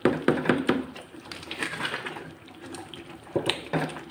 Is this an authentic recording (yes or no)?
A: no